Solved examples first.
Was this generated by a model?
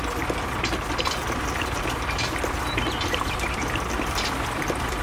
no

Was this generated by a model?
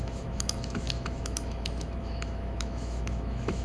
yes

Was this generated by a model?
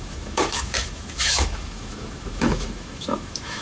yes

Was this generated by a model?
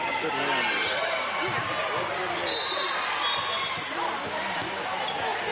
no